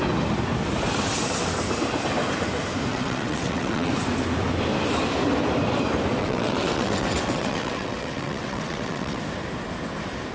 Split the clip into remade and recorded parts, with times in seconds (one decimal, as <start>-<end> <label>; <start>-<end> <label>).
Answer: 0.0-2.9 recorded; 2.9-3.9 remade; 3.9-6.2 recorded; 6.2-9.2 remade; 9.2-10.3 recorded